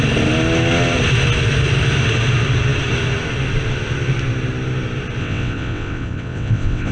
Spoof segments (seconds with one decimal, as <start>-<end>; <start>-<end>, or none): 5.2-6.9